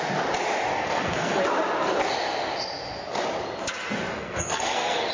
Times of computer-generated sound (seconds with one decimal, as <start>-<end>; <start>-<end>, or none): 0.7-1.4; 4.1-5.1